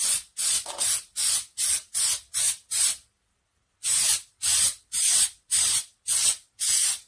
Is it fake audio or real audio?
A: real